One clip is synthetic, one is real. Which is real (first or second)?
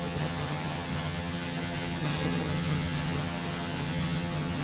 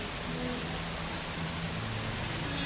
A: second